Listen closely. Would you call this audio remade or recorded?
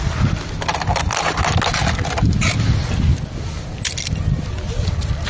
recorded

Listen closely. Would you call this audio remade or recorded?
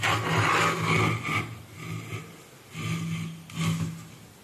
recorded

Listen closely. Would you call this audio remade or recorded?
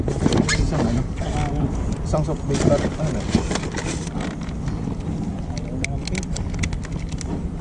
recorded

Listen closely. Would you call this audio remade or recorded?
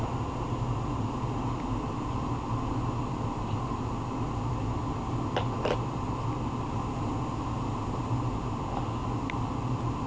recorded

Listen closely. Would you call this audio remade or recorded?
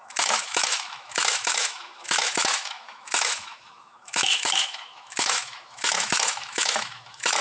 remade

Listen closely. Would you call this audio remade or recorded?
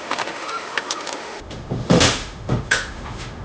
remade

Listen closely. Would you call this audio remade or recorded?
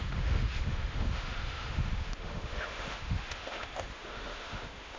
remade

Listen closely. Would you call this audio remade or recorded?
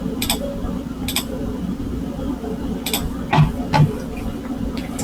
recorded